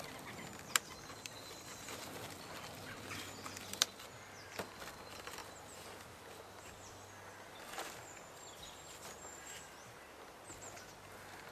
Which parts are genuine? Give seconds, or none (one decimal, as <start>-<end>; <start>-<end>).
0.0-11.5